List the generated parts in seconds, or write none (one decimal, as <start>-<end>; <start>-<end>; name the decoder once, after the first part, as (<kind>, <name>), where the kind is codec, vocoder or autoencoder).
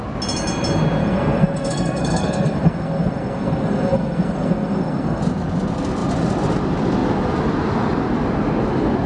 1.0-5.2 (codec, SNAC)